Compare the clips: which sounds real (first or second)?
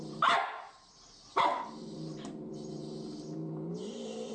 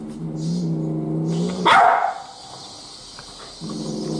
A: second